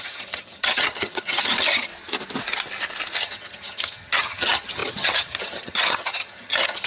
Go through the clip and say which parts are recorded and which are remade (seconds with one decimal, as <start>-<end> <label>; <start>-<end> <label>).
0.0-1.9 remade; 1.9-3.2 recorded; 3.2-6.9 remade